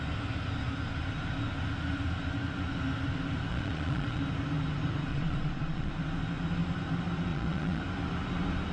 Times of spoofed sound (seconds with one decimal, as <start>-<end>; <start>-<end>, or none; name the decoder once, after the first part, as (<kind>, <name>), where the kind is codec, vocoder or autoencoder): 3.5-4.2 (vocoder, Vocos); 5.1-5.9; 7.3-7.8